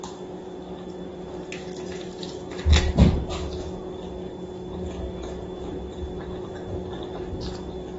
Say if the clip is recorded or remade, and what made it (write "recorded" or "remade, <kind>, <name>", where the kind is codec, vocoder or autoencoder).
recorded